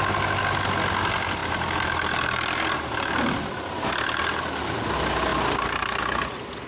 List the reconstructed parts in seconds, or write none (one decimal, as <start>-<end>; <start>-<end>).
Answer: 1.4-2.9; 5.3-6.0